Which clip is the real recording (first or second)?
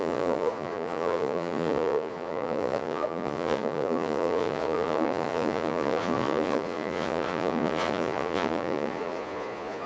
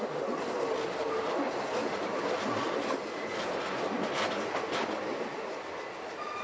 second